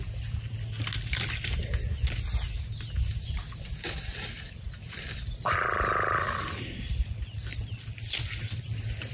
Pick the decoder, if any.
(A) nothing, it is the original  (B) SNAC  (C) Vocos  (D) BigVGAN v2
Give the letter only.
A